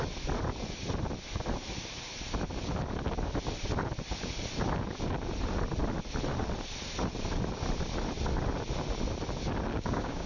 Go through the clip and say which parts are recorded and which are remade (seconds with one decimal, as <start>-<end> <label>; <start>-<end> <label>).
0.0-9.7 recorded; 9.7-10.3 remade